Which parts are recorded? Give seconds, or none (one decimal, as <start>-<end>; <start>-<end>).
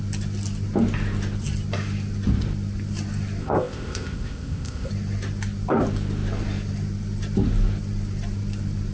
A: 0.0-3.4; 4.9-8.9